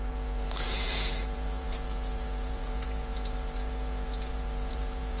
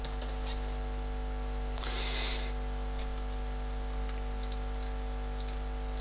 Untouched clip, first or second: second